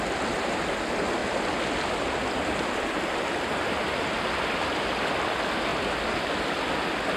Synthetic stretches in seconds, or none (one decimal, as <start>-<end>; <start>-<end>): 1.2-5.3; 5.7-6.4